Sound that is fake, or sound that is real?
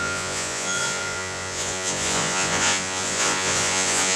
fake